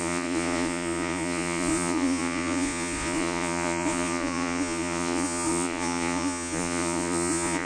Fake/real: fake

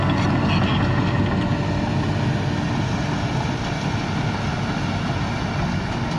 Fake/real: real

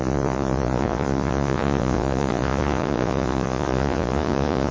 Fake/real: fake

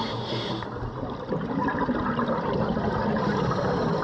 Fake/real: real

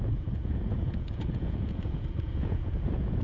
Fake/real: fake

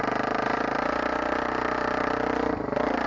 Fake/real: real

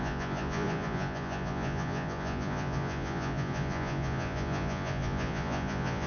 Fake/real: fake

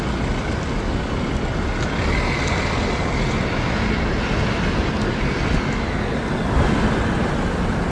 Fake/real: real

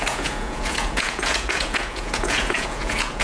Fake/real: fake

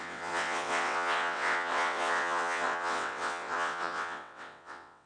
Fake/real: fake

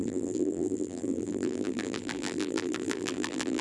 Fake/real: fake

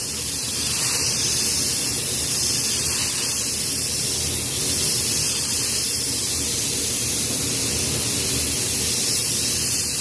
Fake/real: real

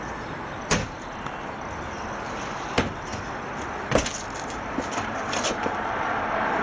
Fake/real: real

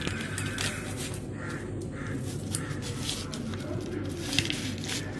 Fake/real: real